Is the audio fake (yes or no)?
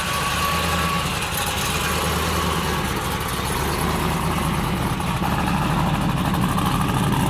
no